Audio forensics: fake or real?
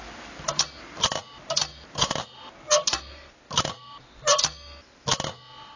real